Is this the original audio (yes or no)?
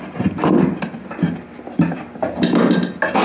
yes